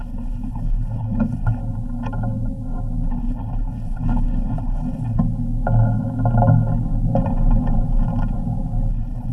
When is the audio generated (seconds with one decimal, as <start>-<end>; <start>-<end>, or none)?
0.0-1.6; 3.1-5.2; 8.9-9.3